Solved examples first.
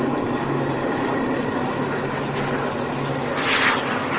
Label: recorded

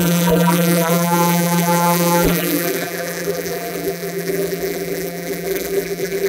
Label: remade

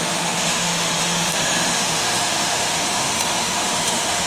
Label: remade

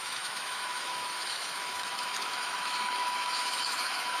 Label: remade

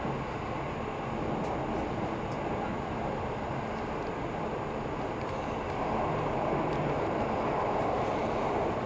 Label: recorded